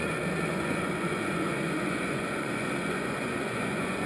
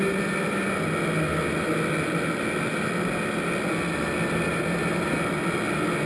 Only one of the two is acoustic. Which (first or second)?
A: second